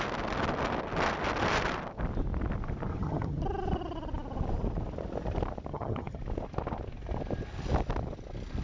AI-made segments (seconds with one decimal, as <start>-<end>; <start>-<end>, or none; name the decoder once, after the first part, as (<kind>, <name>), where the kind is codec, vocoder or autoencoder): 2.9-3.4 (vocoder, HiFi-GAN); 5.7-6.2